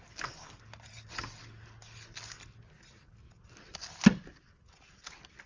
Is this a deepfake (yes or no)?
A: no